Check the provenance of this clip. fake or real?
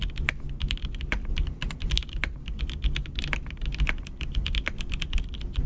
real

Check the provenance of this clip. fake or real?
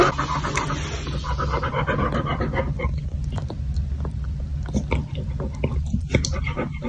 real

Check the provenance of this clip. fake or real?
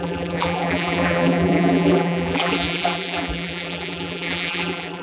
fake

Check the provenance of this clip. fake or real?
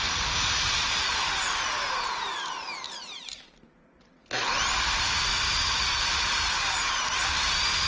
fake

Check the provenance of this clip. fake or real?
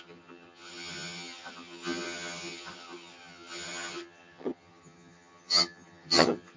fake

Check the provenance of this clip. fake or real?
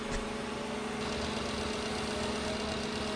real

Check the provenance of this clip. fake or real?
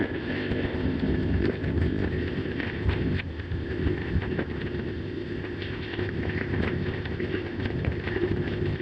fake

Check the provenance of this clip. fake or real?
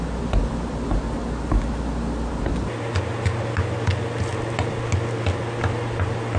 real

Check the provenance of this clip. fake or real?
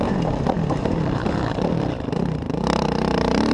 fake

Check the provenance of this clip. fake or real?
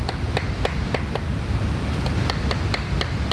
real